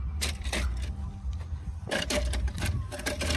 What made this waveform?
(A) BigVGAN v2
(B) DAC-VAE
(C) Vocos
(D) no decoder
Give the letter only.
D